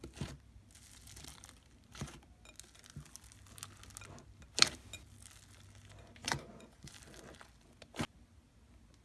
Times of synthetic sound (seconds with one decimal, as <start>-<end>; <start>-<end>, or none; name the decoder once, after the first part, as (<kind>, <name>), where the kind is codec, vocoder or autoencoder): 6.2-6.9 (vocoder, Vocos)